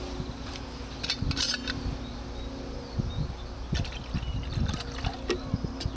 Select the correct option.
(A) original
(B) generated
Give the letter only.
A